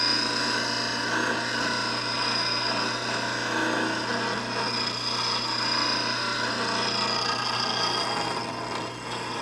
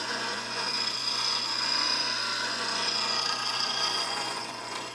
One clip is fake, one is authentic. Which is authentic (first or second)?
first